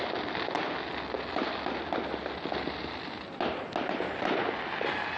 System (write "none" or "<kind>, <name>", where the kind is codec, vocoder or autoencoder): none